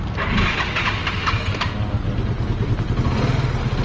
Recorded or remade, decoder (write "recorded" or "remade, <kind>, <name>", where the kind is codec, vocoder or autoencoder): recorded